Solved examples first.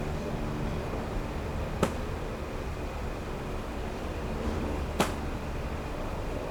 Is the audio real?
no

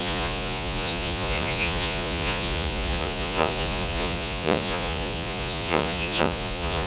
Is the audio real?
no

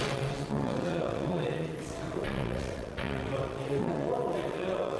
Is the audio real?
no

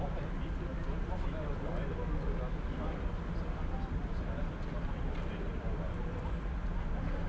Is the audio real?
yes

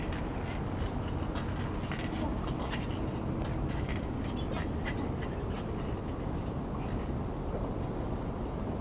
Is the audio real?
yes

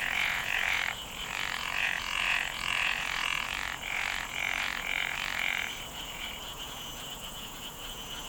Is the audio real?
no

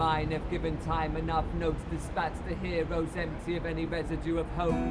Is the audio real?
yes